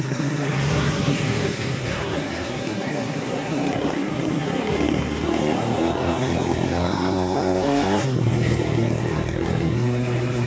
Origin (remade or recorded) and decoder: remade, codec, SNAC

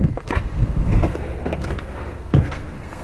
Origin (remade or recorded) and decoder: remade, codec, SNAC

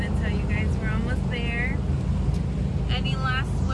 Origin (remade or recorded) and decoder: recorded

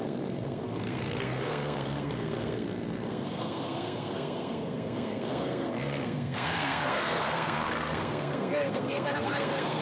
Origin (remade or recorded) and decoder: remade, codec, SNAC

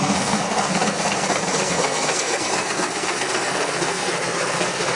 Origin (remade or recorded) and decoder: remade, codec, SNAC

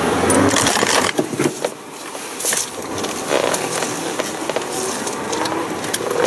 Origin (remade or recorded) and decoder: recorded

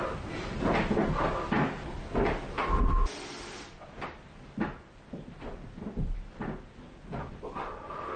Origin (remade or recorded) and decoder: recorded